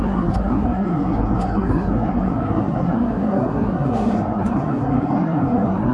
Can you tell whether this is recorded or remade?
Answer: remade